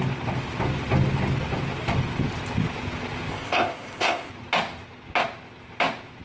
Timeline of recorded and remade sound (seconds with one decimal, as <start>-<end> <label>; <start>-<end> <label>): 0.0-3.3 recorded; 3.3-4.3 remade; 4.3-6.2 recorded